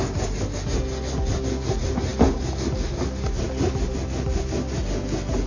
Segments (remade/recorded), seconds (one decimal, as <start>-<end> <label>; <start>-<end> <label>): 0.0-5.5 recorded